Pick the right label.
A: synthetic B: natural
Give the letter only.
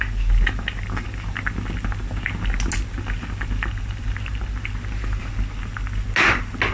B